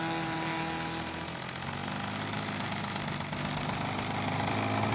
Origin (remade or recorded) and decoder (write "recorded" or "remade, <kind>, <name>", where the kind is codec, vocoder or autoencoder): recorded